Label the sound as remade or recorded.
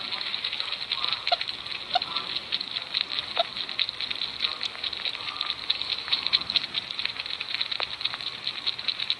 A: recorded